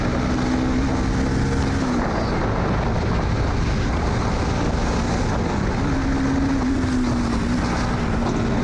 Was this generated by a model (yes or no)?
no